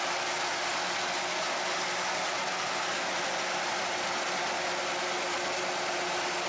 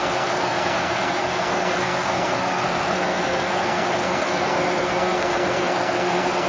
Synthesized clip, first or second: second